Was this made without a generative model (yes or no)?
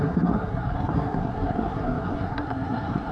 no